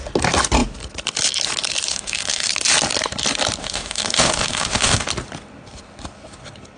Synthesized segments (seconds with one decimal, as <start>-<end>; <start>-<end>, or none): 1.9-2.5; 3.6-5.1